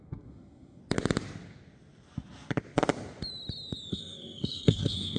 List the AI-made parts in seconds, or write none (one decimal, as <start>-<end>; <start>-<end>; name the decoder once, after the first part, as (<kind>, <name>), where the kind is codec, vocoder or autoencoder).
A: 0.0-0.8 (codec, SNAC); 3.9-5.2